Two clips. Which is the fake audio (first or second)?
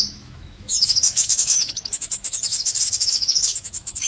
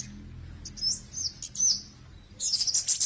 first